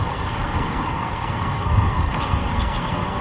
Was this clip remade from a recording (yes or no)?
yes